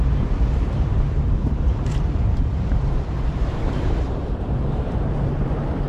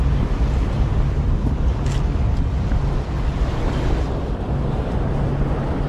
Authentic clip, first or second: second